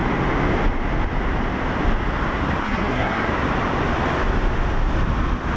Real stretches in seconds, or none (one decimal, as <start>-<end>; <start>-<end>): 0.0-2.6; 3.3-5.6